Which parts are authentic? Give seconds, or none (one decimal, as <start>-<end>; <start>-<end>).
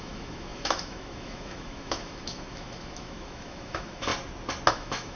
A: 4.1-4.7